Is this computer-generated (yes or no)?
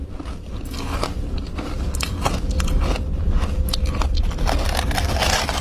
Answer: no